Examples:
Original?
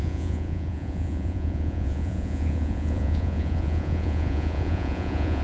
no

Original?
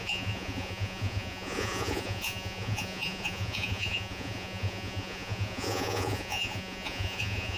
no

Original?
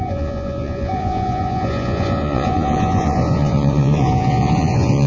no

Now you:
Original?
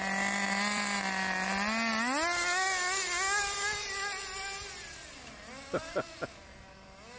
yes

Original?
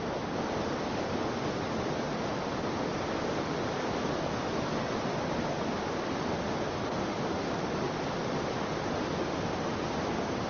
yes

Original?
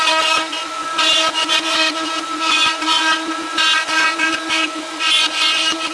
no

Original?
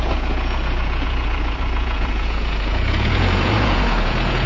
no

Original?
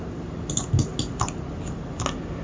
yes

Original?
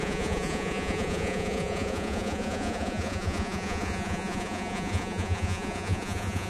no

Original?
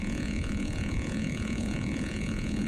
no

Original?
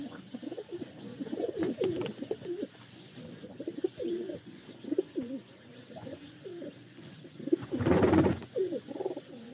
no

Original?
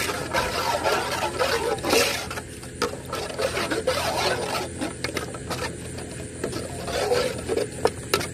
yes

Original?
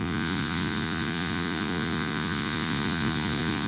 no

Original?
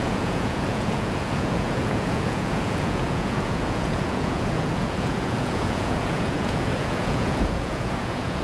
no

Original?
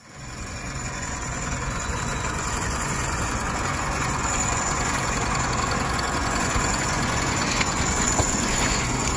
no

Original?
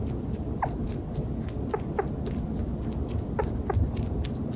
yes